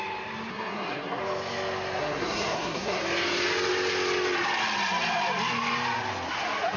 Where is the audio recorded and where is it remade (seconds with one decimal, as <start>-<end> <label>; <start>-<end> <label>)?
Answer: 0.0-0.5 recorded; 0.5-1.2 remade; 1.2-2.0 recorded; 2.0-3.0 remade; 3.0-6.8 recorded